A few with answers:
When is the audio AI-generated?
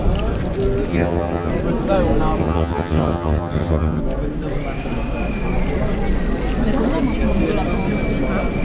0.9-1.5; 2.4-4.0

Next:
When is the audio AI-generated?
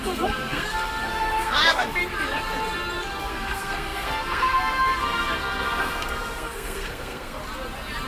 0.0-2.0; 3.2-7.4